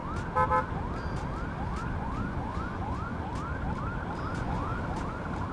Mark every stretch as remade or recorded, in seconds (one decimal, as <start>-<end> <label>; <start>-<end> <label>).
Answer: 0.0-2.0 recorded; 2.0-3.3 remade; 3.3-4.3 recorded; 4.3-4.7 remade; 4.7-5.5 recorded